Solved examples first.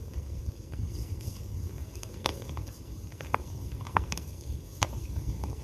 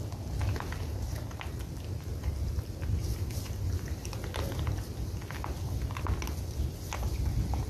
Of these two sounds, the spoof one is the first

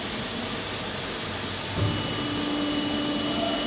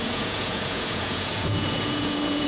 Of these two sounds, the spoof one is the second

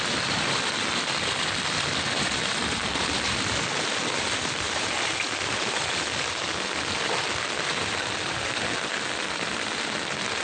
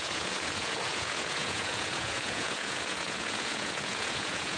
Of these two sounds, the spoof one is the second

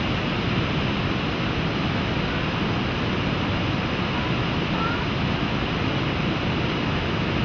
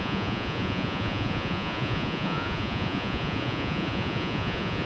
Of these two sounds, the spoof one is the second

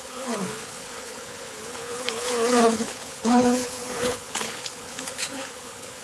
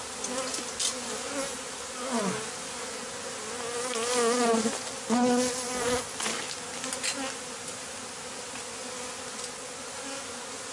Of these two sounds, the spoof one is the first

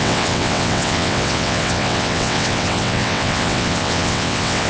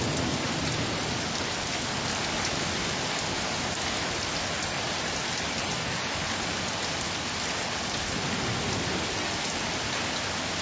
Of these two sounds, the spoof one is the first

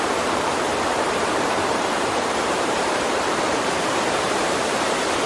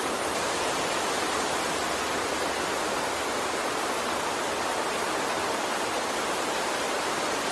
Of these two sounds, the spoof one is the first